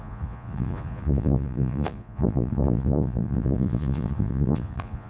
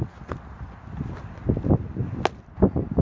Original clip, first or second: second